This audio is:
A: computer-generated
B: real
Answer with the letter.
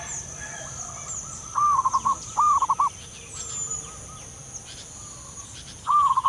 B